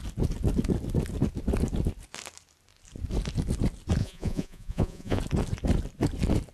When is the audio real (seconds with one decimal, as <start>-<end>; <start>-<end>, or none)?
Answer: 0.0-4.0; 5.2-6.5